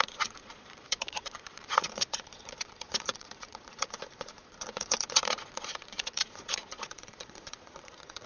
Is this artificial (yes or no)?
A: yes